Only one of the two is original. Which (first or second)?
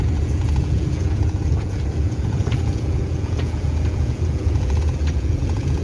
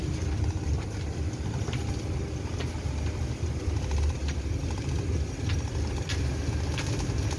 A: second